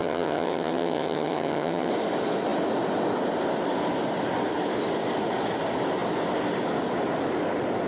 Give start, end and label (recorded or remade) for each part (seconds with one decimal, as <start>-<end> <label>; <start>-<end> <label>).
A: 0.0-1.9 remade; 1.9-7.9 recorded